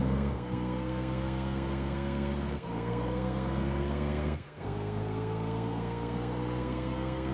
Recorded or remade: remade